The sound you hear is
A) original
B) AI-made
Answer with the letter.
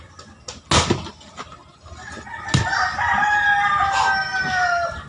A